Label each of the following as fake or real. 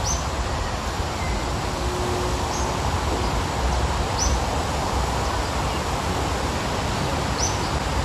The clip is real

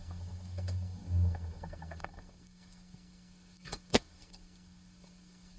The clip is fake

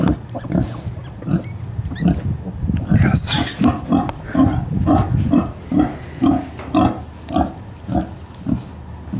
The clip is real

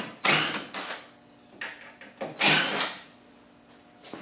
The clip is real